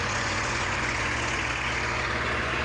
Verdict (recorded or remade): remade